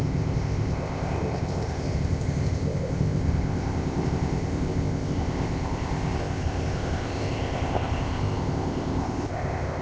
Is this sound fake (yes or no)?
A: yes